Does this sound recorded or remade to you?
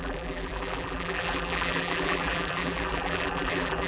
remade